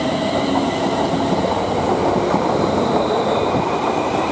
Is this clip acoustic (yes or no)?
yes